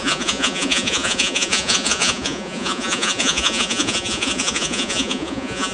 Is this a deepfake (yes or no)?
yes